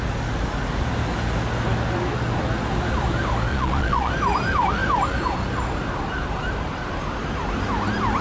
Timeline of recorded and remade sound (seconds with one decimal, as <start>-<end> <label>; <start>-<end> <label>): 0.0-3.5 recorded; 3.5-4.1 remade; 4.1-8.2 recorded